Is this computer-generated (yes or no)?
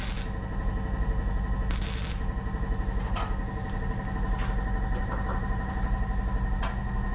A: no